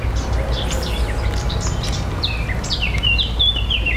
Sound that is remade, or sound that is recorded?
recorded